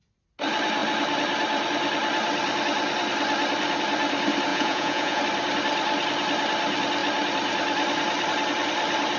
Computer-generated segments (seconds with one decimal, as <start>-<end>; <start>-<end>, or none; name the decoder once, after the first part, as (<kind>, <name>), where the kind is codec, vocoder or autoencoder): 4.5-5.2 (vocoder, Vocos)